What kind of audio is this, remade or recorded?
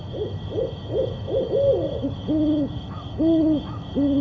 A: remade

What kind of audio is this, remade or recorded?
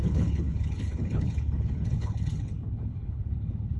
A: remade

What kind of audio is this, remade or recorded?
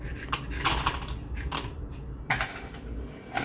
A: recorded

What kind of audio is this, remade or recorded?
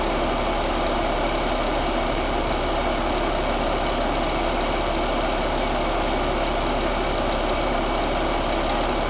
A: recorded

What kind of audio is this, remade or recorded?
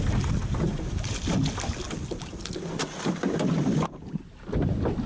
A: recorded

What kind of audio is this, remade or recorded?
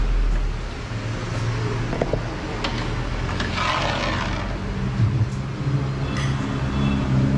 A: recorded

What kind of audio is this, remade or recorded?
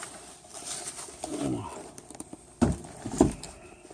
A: remade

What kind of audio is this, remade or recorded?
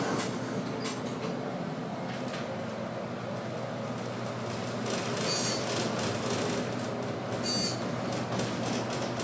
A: recorded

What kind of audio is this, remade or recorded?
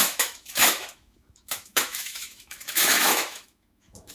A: remade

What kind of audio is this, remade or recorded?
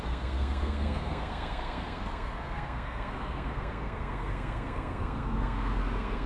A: remade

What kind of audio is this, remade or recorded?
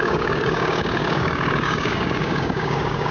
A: remade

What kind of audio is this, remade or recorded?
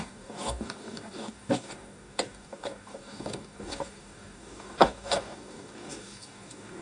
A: remade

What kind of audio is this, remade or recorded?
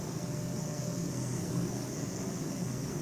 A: remade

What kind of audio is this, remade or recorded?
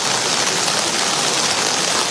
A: recorded